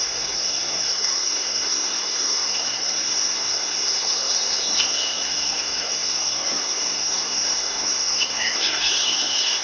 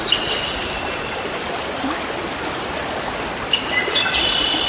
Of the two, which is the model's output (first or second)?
first